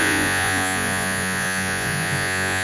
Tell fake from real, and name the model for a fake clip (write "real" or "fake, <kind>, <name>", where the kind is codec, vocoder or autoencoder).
fake, vocoder, Vocos